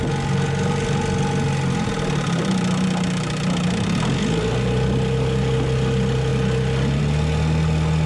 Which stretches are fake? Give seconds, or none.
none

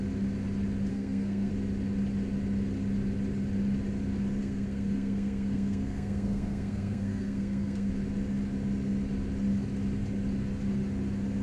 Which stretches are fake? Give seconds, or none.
0.9-1.5; 4.4-7.9

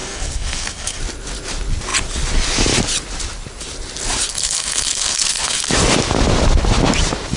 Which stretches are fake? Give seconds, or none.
0.0-1.0; 4.3-5.6

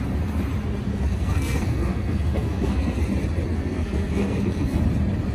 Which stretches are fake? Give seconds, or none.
0.9-3.0; 3.5-4.8

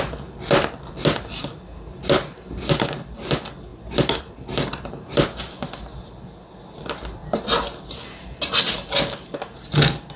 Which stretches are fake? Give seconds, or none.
none

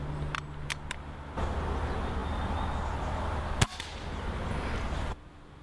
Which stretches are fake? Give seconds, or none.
none

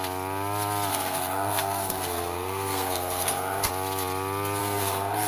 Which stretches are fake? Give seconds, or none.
0.9-3.7; 4.6-5.3

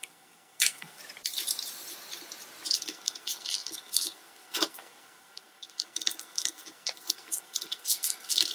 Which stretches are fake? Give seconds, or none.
0.0-1.0; 2.7-8.5